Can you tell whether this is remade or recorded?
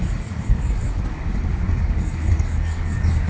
remade